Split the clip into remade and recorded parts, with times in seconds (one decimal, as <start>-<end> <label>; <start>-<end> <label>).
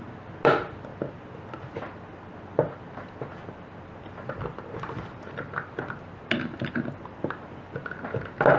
0.0-8.6 recorded